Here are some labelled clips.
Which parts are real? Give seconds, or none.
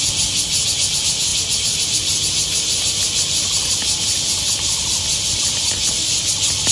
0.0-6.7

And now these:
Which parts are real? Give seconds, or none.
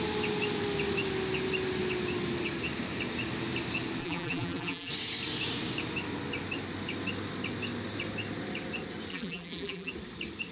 0.0-4.0; 4.9-9.1; 9.9-10.5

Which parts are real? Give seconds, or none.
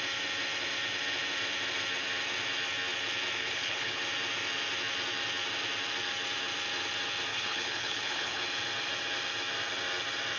0.0-3.4; 4.0-7.3; 8.4-10.4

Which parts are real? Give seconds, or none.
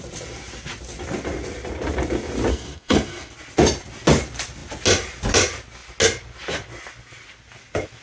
0.0-2.5; 3.3-8.0